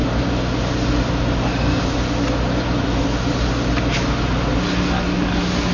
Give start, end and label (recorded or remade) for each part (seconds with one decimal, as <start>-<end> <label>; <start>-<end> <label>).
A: 0.0-5.7 recorded